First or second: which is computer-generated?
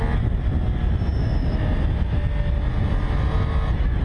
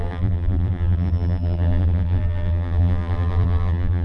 second